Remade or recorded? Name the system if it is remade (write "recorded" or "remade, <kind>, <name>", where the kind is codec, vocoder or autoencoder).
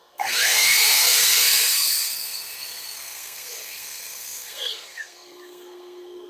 remade, codec, SNAC